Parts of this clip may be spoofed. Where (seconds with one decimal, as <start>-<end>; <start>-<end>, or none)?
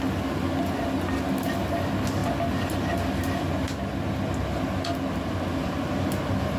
5.6-6.6